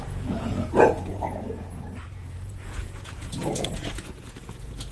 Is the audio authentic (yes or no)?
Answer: no